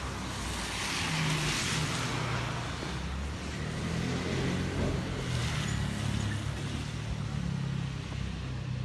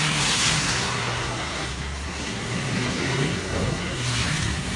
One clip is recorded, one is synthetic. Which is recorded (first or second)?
first